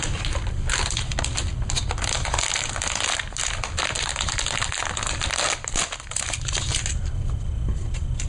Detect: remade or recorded recorded